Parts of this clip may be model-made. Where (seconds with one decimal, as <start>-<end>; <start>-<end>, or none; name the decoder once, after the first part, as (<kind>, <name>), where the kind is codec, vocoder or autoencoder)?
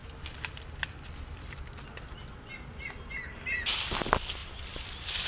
none